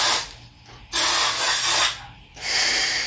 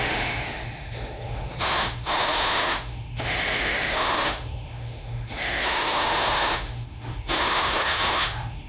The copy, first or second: second